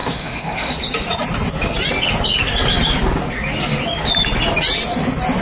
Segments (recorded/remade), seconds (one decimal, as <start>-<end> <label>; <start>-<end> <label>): 0.0-0.7 remade; 0.7-5.4 recorded